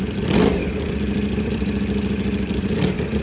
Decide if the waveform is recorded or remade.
remade